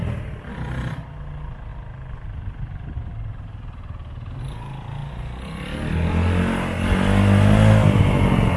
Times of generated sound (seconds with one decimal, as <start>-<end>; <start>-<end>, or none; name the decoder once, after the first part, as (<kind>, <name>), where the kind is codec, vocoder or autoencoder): none